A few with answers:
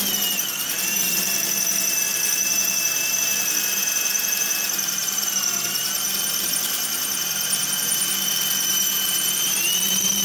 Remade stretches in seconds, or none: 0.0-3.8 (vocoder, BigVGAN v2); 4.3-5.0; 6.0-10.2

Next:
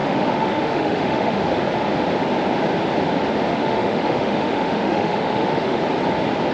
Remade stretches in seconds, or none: 0.0-1.5 (autoencoder, DAC-VAE); 3.5-5.8

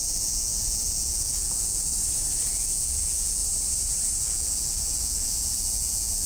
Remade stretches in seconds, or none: 0.0-1.9 (vocoder, Vocos); 2.5-3.4; 4.2-6.3

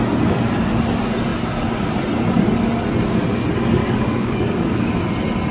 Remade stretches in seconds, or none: 3.8-4.9 (codec, DAC)

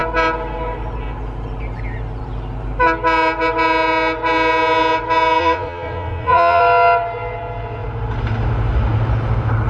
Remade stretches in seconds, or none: 5.4-6.6 (vocoder, Vocos)